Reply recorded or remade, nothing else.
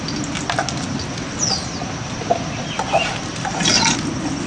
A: recorded